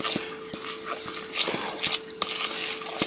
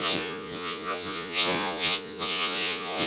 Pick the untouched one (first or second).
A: first